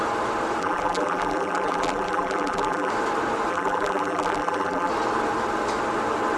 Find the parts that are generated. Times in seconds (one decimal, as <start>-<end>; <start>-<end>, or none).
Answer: 0.6-2.9; 3.5-4.9